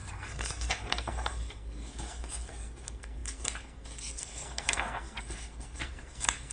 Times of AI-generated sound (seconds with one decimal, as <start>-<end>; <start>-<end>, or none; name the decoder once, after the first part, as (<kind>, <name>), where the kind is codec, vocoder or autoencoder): 0.0-6.5 (codec, SNAC)